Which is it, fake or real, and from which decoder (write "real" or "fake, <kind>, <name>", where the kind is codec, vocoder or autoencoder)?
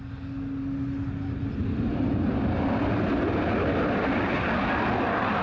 real